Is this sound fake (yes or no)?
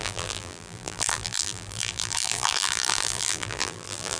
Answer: yes